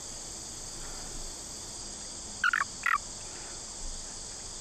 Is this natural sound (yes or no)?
yes